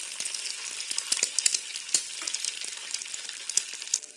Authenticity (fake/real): real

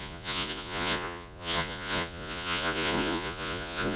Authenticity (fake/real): fake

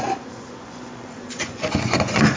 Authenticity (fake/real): fake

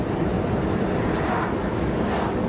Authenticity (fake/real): real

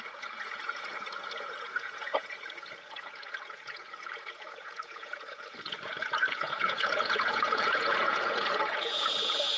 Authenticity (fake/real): fake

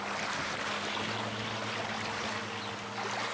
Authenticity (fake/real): real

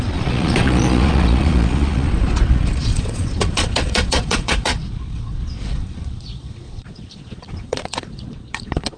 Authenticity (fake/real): fake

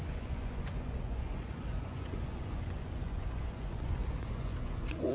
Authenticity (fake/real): fake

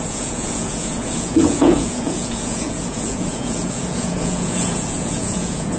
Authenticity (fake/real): fake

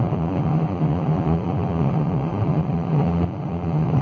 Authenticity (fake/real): fake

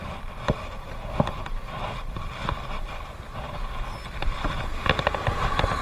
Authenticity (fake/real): real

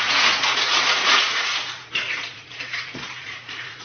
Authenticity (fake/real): fake